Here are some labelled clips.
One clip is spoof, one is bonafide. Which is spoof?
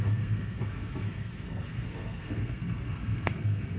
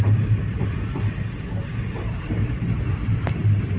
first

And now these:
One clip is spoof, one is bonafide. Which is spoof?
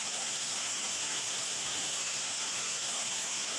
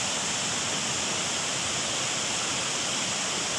first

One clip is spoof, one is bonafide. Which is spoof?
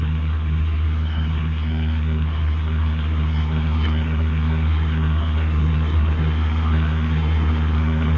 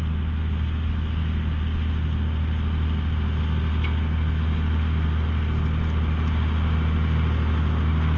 first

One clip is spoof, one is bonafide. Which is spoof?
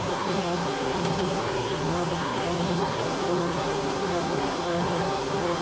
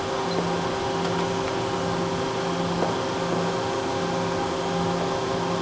first